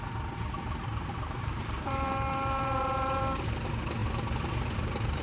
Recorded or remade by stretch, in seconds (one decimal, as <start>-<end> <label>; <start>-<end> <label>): 0.0-0.9 recorded; 0.9-3.2 remade; 3.2-4.0 recorded; 4.0-5.2 remade